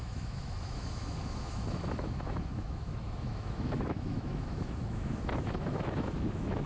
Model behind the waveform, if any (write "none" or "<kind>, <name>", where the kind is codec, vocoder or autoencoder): autoencoder, DAC-VAE